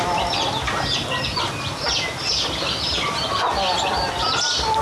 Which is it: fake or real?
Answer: real